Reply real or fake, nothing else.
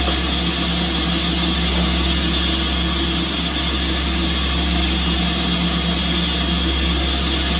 real